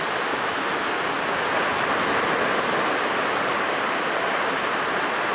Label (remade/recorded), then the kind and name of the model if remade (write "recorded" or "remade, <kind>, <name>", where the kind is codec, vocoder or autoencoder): recorded